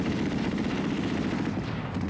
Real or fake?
real